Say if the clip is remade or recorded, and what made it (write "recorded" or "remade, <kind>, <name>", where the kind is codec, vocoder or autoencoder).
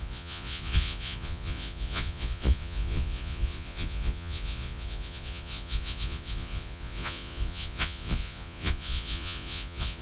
remade, vocoder, Vocos